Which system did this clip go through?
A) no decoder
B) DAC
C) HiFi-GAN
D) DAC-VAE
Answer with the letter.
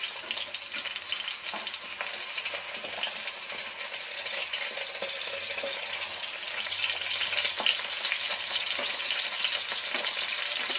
A